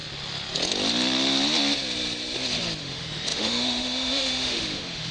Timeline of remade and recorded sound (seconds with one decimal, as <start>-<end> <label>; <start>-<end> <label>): 0.0-2.8 recorded; 2.8-5.1 remade